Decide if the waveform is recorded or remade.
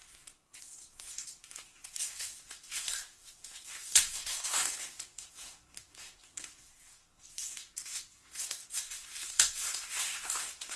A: remade